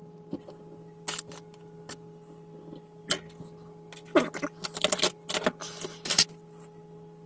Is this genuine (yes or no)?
yes